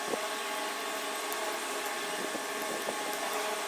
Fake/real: real